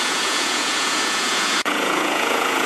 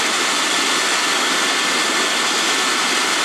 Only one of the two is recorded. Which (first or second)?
second